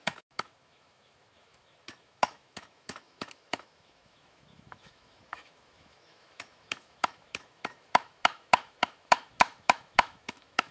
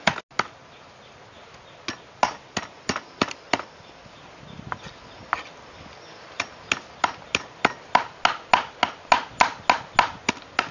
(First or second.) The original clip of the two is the second